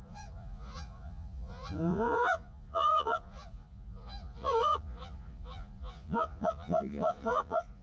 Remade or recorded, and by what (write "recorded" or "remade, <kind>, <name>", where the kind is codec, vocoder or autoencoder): remade, vocoder, Vocos